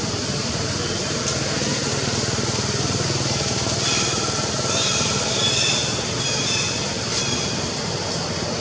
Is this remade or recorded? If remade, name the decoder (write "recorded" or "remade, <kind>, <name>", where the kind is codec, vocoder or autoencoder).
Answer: recorded